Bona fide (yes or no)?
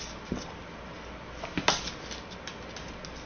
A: yes